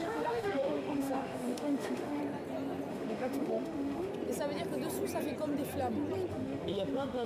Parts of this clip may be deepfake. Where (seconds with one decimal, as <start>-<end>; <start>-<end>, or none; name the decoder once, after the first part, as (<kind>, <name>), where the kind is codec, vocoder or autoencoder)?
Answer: 0.0-2.2 (autoencoder, DAC-VAE); 2.9-4.1; 6.3-7.3